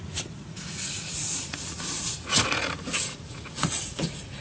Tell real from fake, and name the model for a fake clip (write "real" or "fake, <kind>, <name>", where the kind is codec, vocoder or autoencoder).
fake, vocoder, Vocos